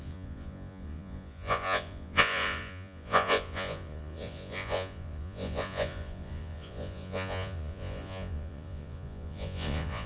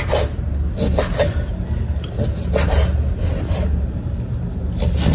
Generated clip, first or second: first